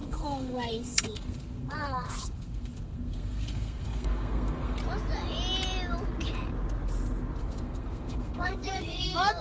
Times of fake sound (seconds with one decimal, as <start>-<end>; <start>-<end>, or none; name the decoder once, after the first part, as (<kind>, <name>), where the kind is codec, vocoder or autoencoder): 0.0-4.8 (codec, SNAC); 7.4-9.4